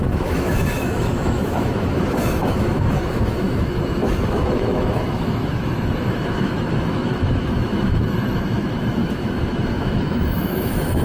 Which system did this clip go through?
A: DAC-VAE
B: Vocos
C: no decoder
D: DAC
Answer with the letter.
A